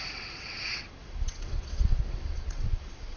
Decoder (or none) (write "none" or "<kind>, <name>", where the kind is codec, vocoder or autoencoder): vocoder, WaveNeXt